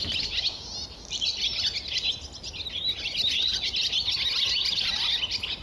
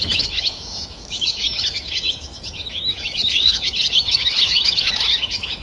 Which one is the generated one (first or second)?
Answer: second